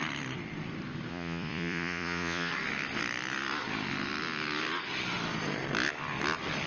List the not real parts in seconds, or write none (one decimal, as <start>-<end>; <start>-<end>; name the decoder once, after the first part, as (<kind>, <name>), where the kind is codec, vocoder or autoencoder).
1.1-2.5 (vocoder, Vocos)